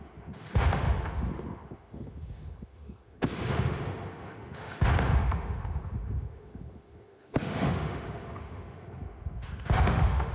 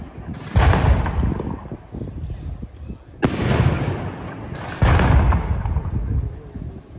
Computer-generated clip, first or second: first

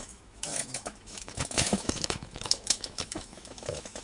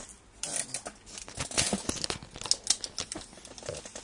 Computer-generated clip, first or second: first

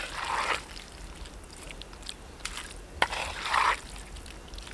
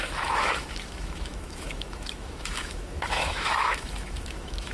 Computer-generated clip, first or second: second